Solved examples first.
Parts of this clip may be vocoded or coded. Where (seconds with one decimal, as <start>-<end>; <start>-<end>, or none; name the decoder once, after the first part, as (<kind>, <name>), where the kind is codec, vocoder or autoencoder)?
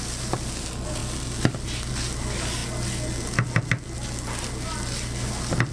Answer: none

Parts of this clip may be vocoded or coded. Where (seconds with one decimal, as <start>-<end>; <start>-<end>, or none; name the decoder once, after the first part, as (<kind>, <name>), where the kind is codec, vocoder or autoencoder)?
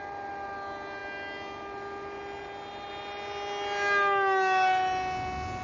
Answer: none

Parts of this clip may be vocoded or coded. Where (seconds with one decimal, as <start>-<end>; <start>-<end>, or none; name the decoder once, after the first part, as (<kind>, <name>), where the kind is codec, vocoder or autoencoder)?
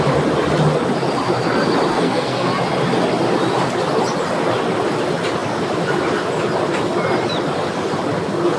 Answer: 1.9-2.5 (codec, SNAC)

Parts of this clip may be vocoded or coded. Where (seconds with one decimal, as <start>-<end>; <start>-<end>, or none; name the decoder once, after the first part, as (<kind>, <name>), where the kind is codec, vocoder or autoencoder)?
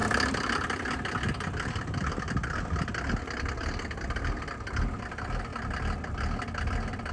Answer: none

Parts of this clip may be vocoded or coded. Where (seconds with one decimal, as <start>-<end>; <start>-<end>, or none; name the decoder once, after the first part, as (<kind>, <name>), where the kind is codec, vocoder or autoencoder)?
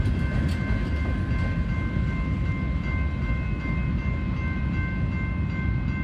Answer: none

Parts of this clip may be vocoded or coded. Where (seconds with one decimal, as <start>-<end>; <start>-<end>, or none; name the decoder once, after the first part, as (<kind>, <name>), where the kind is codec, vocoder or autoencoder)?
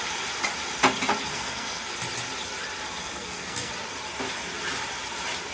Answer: 1.3-1.9 (codec, SNAC); 3.0-3.7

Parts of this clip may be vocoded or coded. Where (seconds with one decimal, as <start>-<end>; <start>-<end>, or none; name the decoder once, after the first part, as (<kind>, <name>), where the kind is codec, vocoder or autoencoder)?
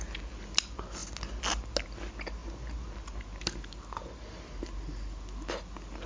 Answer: none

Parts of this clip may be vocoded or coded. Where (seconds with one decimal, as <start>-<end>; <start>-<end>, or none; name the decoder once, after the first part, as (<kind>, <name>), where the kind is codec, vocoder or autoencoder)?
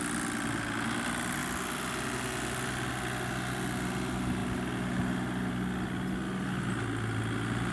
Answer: none